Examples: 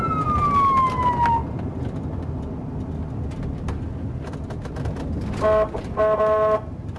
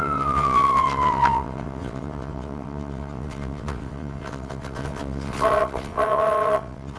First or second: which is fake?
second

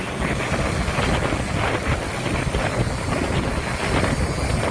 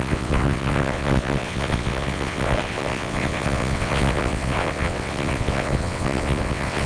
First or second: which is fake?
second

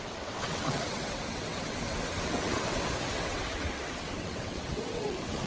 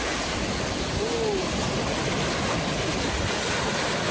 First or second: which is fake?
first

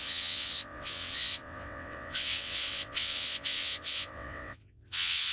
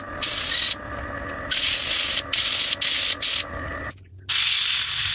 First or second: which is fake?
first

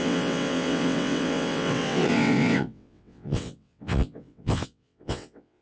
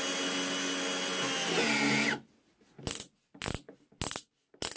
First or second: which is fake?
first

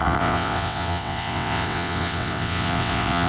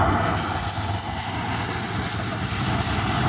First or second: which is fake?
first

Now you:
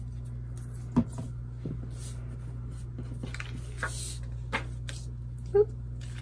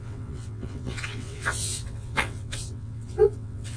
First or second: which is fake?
second